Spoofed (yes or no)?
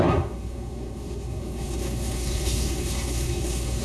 yes